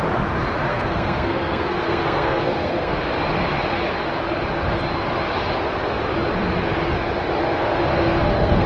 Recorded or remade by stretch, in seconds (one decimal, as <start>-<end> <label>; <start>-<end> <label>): 0.0-0.7 recorded; 0.7-3.0 remade; 3.0-7.9 recorded; 7.9-8.7 remade